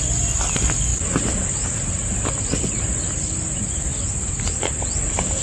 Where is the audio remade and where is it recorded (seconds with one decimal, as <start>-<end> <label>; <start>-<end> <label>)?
0.0-0.9 remade; 0.9-2.9 recorded; 2.9-3.9 remade; 3.9-5.4 recorded